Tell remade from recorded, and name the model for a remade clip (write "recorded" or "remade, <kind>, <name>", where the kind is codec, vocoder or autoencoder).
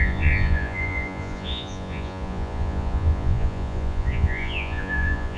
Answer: remade, vocoder, Vocos